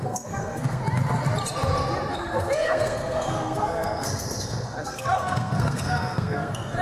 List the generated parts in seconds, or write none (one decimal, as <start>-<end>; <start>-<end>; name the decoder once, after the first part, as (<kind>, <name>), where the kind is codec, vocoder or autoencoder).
0.0-0.8 (codec, SNAC); 2.1-6.8